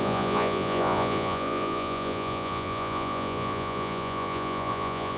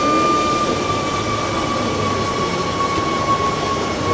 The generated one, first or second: first